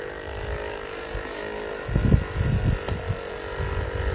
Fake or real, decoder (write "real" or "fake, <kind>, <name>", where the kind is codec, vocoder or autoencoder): real